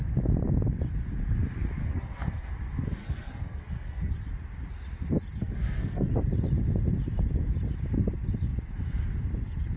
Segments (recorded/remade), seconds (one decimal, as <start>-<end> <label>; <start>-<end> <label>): 0.0-1.8 recorded; 1.8-2.5 remade; 2.5-3.0 recorded; 3.0-4.1 remade; 4.1-5.4 recorded; 5.4-6.1 remade; 6.1-9.8 recorded